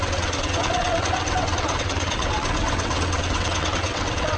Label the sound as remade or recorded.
remade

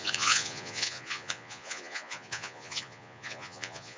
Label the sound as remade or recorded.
remade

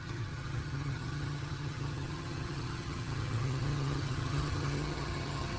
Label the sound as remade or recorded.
remade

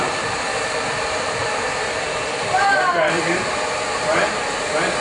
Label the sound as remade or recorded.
remade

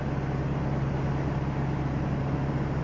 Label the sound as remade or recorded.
recorded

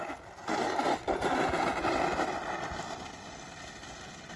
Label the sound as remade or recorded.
recorded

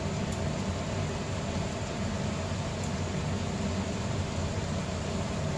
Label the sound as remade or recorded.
recorded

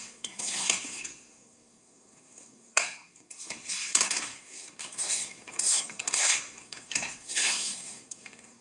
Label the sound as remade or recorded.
remade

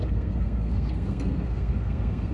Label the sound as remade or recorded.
remade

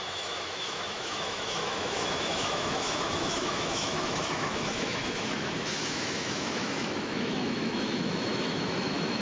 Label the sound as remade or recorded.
remade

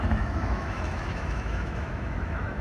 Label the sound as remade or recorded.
remade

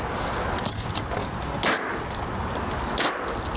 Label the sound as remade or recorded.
recorded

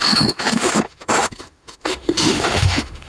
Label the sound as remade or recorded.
remade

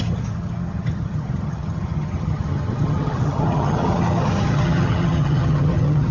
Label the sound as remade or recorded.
remade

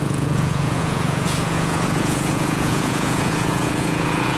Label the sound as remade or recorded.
remade